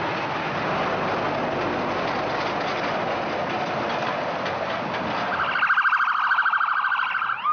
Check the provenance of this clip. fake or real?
real